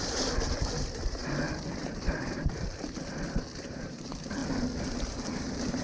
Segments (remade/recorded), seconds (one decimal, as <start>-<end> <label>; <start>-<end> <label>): 0.0-1.5 remade; 1.5-3.6 recorded; 3.6-4.4 remade; 4.4-4.9 recorded; 4.9-5.8 remade